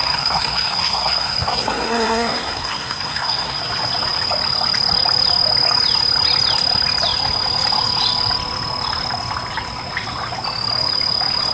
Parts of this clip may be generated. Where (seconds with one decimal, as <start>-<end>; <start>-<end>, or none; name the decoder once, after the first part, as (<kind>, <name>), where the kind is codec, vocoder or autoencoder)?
0.0-3.6 (codec, SNAC)